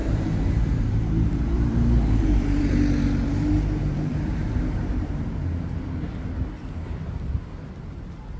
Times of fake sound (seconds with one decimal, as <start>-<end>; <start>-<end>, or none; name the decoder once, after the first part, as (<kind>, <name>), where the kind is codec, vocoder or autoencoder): 0.0-2.7 (vocoder, BigVGAN v2); 3.8-5.5